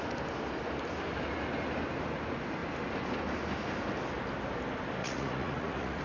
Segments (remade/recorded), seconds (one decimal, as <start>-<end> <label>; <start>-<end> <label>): 0.0-5.0 recorded; 5.0-6.0 remade